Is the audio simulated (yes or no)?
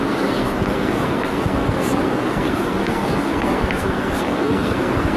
yes